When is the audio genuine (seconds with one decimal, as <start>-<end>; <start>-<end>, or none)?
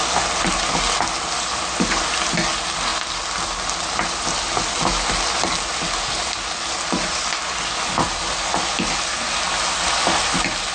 0.0-10.7